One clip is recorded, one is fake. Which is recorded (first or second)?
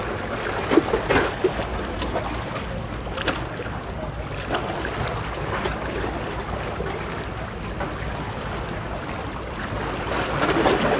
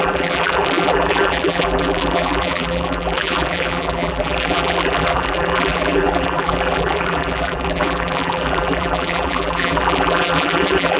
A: first